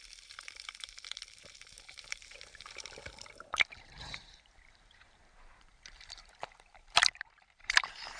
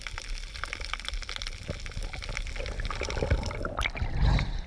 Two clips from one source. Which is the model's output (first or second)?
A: first